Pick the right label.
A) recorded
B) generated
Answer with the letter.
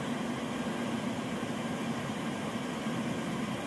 A